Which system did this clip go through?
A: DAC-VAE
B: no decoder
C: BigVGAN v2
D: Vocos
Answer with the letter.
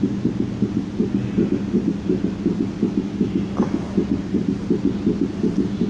B